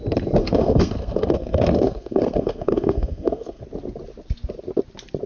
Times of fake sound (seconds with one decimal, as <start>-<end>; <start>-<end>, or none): 0.4-3.6